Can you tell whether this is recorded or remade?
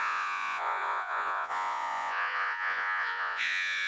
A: remade